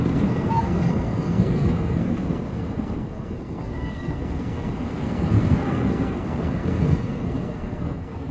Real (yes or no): no